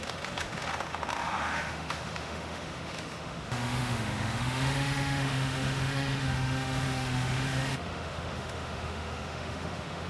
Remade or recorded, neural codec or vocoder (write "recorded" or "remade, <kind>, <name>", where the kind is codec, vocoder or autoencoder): remade, autoencoder, DAC-VAE